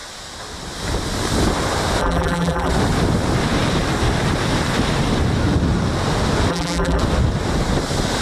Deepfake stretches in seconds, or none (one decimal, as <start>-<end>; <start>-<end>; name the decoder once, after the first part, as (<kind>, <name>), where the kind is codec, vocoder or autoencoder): 2.0-2.7 (vocoder, BigVGAN v2); 6.5-7.0